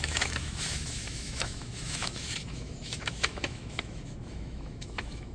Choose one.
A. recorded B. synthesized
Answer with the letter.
B